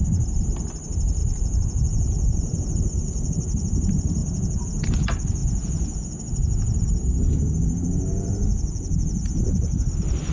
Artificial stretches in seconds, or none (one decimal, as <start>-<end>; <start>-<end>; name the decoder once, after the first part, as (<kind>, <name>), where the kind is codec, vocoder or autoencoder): 1.2-2.8 (vocoder, Vocos); 4.2-4.8; 5.4-9.9